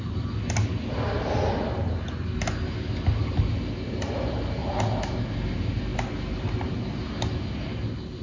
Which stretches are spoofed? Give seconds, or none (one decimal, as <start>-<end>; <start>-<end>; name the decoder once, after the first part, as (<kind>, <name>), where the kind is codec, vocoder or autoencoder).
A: none